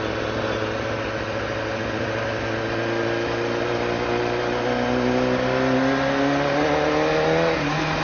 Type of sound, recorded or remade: recorded